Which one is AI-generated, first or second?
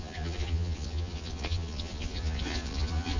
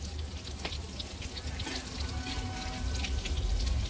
first